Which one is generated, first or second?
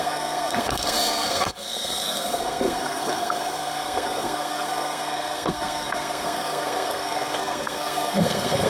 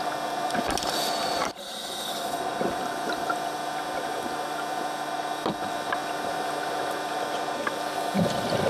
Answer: first